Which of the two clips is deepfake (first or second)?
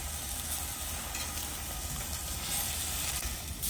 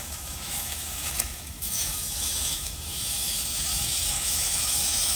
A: second